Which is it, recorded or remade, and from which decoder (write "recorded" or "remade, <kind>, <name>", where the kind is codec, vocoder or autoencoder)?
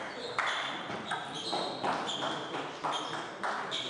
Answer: recorded